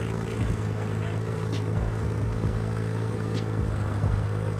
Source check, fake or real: fake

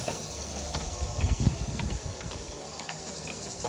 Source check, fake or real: fake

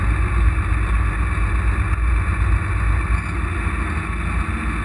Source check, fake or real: real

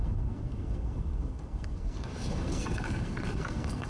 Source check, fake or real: fake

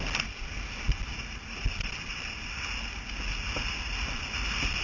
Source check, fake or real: real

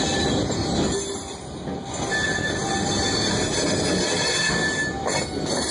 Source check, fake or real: real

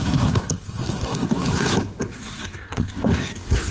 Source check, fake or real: fake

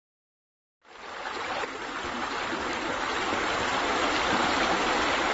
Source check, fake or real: real